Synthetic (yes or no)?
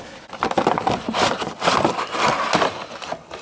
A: no